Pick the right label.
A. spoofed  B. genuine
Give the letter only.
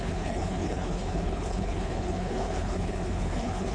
A